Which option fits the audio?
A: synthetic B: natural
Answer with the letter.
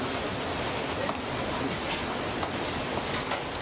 B